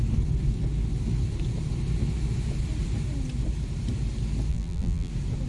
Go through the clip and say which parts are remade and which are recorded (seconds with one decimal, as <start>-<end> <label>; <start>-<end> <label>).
0.0-4.5 recorded; 4.5-5.1 remade; 5.1-5.5 recorded